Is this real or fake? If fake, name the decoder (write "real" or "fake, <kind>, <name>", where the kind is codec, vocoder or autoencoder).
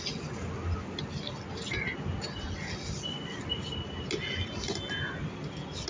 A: real